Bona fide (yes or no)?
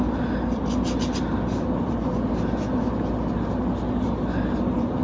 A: yes